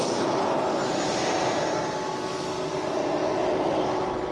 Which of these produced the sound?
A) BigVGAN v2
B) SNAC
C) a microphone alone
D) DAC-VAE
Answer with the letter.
C